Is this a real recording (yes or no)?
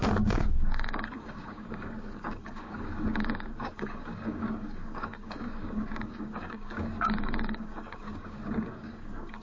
no